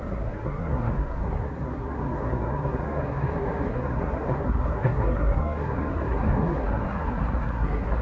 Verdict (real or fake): fake